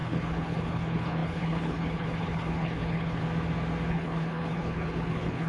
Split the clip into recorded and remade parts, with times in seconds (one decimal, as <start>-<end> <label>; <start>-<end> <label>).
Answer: 0.0-3.2 remade; 3.2-3.9 recorded; 3.9-5.5 remade